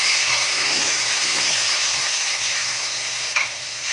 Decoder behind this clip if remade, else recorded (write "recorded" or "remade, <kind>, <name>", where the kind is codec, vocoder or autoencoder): remade, codec, SNAC